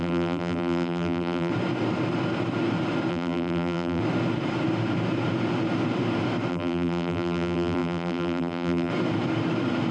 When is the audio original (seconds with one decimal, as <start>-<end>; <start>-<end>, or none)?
1.5-3.1; 4.0-6.5; 8.9-9.9